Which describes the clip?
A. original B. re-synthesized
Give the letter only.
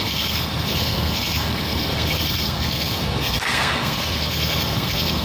B